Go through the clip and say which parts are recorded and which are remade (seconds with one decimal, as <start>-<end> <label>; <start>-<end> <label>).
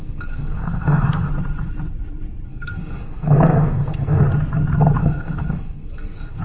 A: 0.0-1.3 remade; 1.3-2.5 recorded; 2.5-4.2 remade; 4.2-5.0 recorded; 5.0-6.4 remade